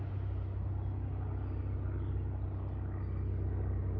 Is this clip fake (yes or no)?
no